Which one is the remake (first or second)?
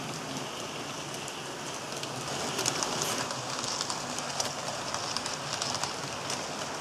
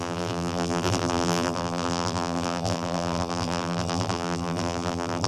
second